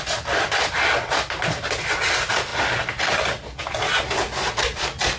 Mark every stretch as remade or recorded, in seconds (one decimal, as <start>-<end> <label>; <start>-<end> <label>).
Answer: 0.0-5.2 recorded